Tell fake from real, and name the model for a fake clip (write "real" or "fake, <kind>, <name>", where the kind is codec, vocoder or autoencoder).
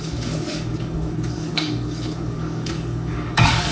fake, codec, DAC